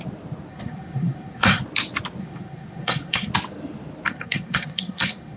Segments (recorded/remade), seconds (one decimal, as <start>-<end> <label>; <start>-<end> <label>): 0.0-0.5 recorded; 0.5-1.6 remade; 1.6-2.2 recorded; 2.2-3.3 remade; 3.3-4.1 recorded; 4.1-5.4 remade